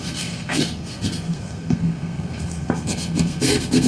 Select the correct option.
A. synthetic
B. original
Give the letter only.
A